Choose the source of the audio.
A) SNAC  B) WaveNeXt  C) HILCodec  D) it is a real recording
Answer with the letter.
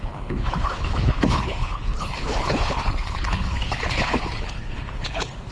C